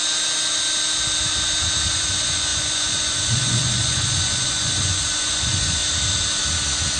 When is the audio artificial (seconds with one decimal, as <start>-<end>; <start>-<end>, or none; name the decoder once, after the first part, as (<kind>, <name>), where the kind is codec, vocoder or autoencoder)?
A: 1.9-5.8 (vocoder, Vocos)